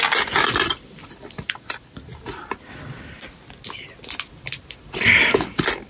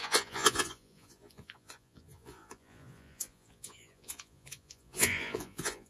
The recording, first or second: first